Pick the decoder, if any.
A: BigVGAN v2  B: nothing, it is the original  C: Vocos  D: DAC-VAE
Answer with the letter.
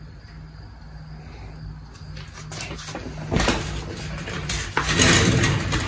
B